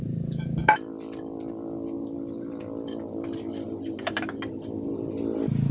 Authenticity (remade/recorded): recorded